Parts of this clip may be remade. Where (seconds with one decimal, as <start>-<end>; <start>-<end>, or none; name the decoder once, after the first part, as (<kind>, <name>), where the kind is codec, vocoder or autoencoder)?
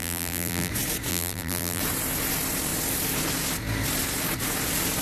0.0-0.7 (vocoder, BigVGAN v2); 1.1-1.8